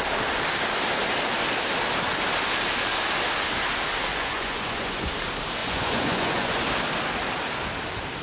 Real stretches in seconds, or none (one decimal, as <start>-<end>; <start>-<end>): 0.0-4.1; 5.1-5.6; 6.6-8.2